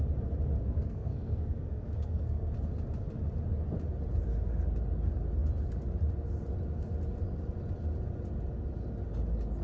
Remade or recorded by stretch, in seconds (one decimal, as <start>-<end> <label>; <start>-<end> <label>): 0.0-0.6 recorded; 0.6-2.5 remade; 2.5-9.6 recorded